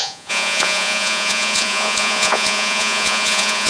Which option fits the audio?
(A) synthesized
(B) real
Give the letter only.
A